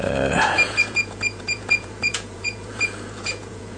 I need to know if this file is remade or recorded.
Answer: remade